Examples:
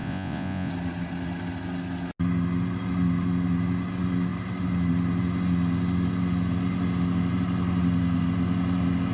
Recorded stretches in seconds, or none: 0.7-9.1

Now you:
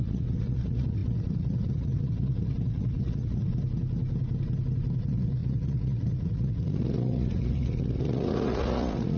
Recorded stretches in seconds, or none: 3.5-5.0

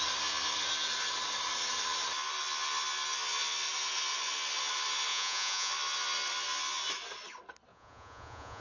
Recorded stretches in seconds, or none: 0.0-5.1; 5.7-7.7

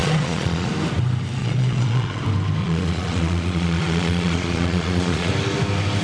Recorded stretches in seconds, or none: 0.7-1.4; 2.2-2.6; 5.3-6.0

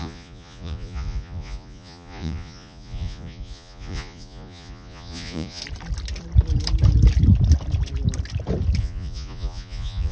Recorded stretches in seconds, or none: 5.6-8.8